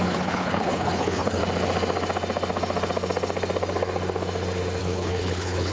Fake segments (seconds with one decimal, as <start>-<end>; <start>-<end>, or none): 0.0-1.4; 4.8-5.7